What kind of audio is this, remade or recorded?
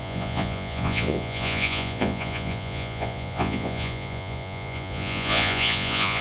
remade